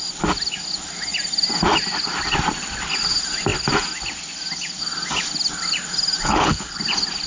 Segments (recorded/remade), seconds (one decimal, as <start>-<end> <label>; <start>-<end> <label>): 0.0-6.2 recorded; 6.2-6.8 remade; 6.8-7.3 recorded